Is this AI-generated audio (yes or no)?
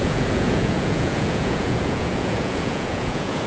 yes